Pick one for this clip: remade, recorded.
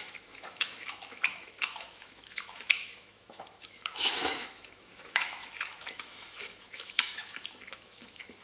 remade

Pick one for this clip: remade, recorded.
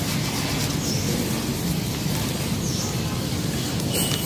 recorded